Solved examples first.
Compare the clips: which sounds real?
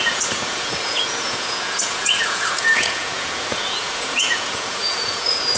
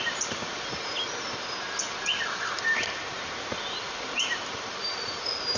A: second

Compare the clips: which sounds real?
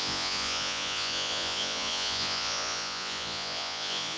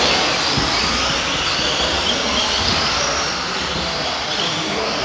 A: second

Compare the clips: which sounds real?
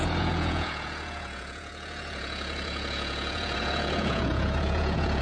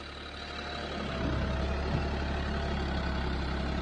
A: second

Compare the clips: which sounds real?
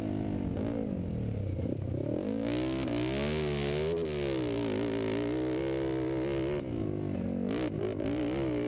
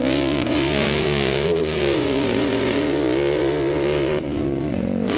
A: first